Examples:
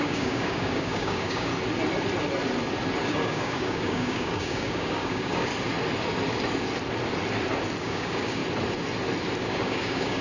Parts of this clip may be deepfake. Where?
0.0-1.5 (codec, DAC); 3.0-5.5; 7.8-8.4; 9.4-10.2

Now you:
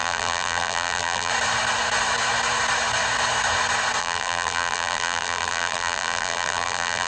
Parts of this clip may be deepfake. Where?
0.0-1.3 (vocoder, BigVGAN v2); 4.0-7.1

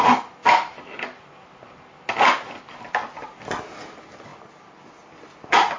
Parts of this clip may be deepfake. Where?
none

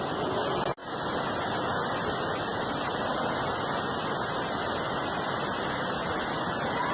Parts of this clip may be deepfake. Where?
none

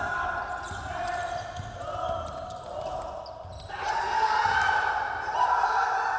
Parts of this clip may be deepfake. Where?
none

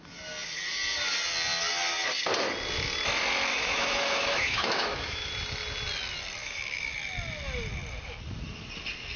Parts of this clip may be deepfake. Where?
3.5-5.3 (autoencoder, DAC-VAE); 6.4-6.9